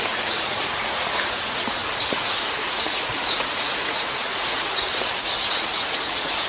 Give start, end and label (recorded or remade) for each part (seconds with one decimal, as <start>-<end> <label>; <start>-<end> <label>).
0.0-6.5 remade